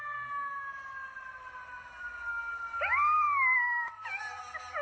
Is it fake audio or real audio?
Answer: real